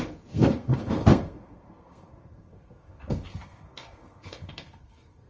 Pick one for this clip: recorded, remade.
remade